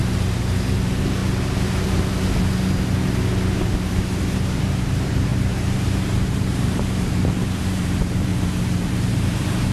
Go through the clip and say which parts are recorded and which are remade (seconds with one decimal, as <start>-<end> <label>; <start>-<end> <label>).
0.0-1.2 remade; 1.2-3.5 recorded; 3.5-8.3 remade; 8.3-8.8 recorded; 8.8-9.7 remade